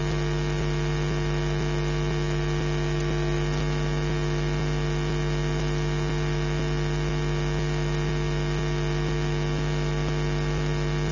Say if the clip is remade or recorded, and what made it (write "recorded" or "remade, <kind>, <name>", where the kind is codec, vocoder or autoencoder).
recorded